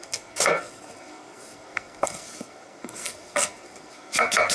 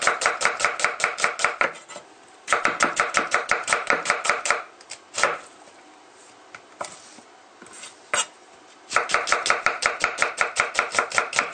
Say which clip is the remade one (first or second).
first